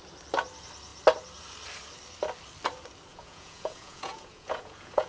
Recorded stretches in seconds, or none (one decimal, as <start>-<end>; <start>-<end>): 0.0-3.1